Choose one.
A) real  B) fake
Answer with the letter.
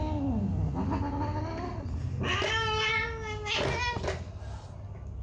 A